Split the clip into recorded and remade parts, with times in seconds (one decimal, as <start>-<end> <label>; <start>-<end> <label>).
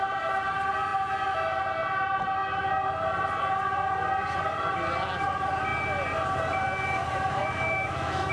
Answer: 0.0-7.4 recorded; 7.4-8.3 remade